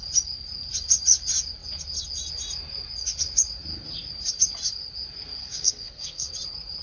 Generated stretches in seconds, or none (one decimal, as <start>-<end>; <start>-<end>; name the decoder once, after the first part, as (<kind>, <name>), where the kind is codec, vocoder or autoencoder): 5.4-6.3 (codec, SNAC)